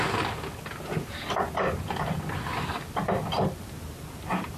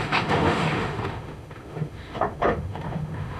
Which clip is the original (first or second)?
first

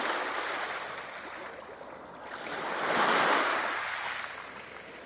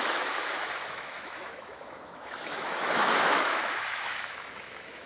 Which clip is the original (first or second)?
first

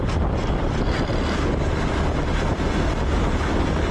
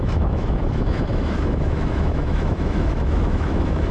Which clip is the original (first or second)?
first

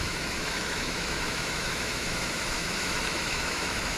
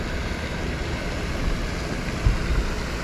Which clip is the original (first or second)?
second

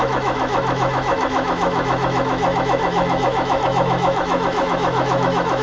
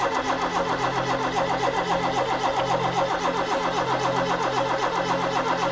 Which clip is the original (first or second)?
second